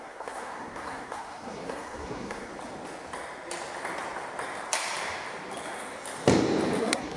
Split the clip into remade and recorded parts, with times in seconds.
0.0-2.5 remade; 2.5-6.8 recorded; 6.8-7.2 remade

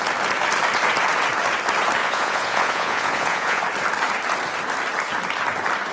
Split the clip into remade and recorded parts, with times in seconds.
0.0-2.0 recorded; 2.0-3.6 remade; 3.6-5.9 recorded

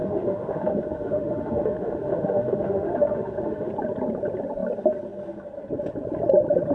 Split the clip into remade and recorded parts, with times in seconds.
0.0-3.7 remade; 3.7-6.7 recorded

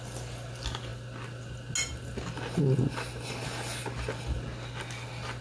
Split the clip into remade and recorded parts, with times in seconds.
0.0-5.4 recorded